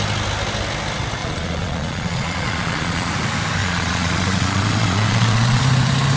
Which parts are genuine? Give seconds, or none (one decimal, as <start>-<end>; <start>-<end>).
0.0-1.2; 3.1-3.6; 5.6-6.2